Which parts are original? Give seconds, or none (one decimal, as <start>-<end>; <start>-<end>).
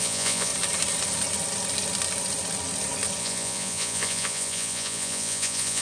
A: 0.5-3.2